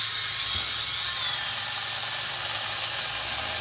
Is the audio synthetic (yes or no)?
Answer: no